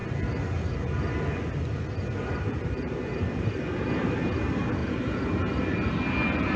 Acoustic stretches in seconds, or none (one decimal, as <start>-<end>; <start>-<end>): 0.0-6.6